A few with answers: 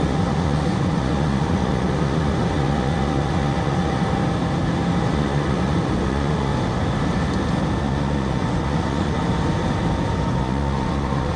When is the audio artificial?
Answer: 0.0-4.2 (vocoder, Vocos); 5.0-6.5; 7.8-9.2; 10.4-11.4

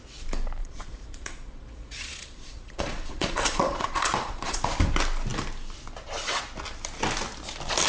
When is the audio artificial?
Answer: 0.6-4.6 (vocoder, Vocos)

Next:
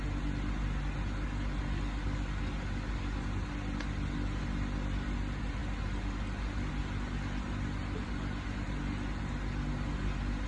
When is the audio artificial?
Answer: none